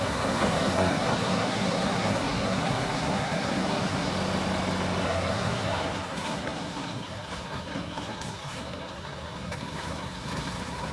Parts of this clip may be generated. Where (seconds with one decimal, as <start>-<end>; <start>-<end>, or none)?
0.0-4.1; 5.0-10.9